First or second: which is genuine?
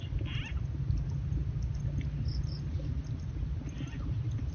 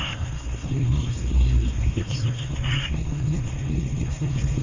first